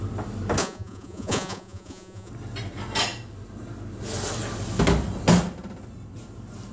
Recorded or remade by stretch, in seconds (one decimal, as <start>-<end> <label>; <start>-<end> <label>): 0.0-0.6 recorded; 0.6-2.3 remade; 2.3-6.7 recorded